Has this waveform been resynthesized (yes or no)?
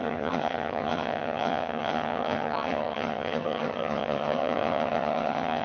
yes